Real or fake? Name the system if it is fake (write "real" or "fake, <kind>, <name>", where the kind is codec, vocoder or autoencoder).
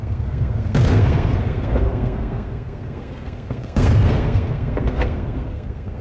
fake, codec, SNAC